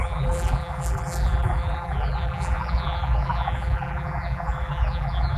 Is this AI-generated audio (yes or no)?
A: yes